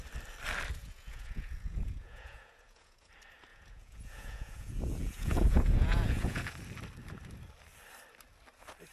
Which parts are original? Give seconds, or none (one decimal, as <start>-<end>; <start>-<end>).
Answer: 0.0-0.8; 3.1-3.5; 6.5-8.9